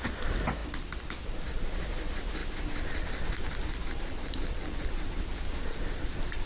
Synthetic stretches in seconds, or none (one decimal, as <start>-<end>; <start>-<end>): none